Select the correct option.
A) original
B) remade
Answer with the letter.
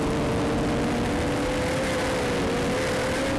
A